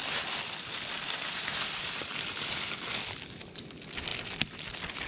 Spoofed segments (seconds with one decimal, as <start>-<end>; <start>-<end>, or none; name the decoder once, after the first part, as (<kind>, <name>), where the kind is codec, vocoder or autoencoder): none